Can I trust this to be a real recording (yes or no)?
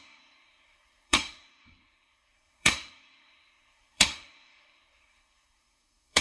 no